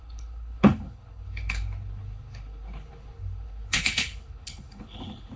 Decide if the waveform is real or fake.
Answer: fake